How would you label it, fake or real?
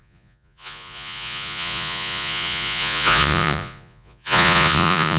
fake